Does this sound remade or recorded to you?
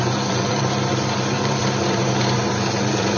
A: remade